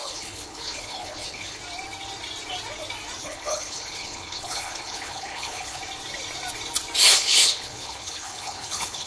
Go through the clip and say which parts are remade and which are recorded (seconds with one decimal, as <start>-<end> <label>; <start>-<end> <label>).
0.0-1.6 remade; 1.6-3.2 recorded; 3.2-5.8 remade; 5.8-7.1 recorded; 7.1-9.1 remade

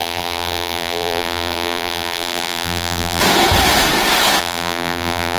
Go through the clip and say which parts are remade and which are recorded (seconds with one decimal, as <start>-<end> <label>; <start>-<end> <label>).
0.0-3.2 remade; 3.2-4.4 recorded; 4.4-5.4 remade